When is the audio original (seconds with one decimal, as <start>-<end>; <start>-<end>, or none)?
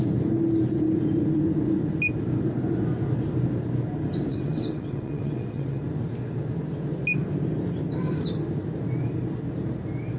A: 0.0-4.3; 5.8-10.2